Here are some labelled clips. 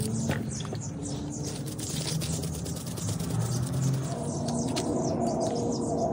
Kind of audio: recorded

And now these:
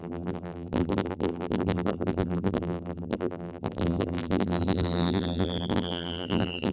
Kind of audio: remade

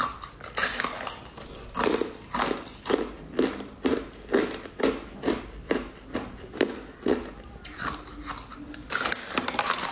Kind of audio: recorded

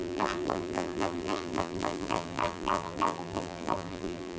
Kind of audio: remade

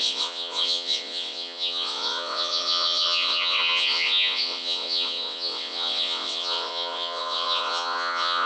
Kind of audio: remade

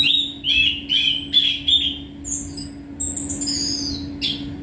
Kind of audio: recorded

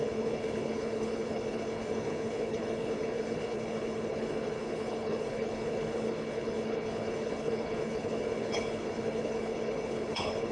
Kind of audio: remade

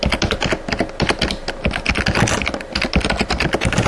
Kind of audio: recorded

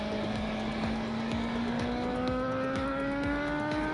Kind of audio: remade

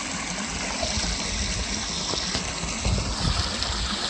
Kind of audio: recorded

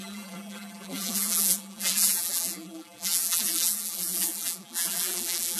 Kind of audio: remade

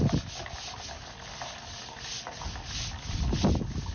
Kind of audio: recorded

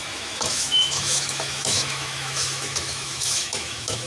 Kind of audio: remade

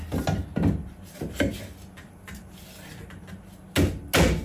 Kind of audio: recorded